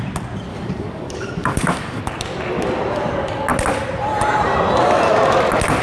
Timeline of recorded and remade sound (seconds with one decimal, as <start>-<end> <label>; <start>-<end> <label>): 0.0-0.5 recorded; 0.5-2.0 remade; 2.0-5.8 recorded